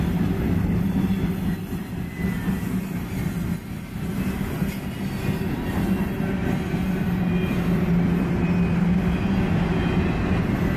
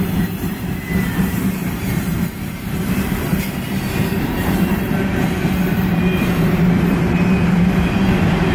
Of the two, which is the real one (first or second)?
first